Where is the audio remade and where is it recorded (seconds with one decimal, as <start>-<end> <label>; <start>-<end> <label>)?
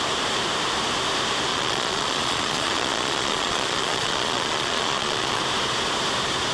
0.0-1.5 recorded; 1.5-5.4 remade; 5.4-6.5 recorded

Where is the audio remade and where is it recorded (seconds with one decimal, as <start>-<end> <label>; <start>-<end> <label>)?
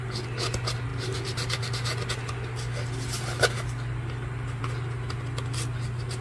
0.0-6.2 recorded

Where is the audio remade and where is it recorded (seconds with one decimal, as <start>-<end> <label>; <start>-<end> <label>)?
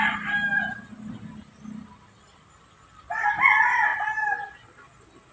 0.0-5.3 recorded